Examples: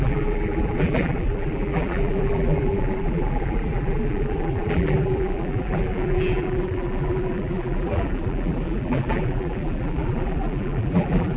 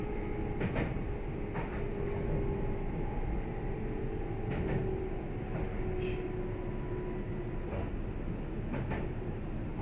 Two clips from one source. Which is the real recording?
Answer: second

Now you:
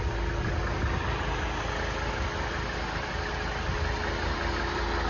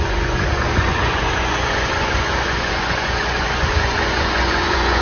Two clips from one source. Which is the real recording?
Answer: first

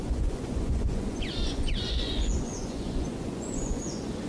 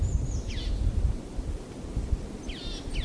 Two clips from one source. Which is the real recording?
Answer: second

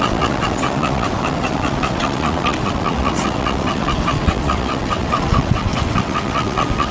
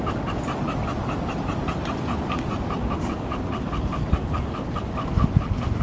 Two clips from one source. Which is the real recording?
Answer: second